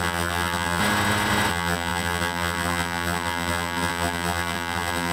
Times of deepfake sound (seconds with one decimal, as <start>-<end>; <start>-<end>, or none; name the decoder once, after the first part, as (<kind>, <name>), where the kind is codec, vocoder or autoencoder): 0.0-0.8 (vocoder, BigVGAN v2); 1.5-5.1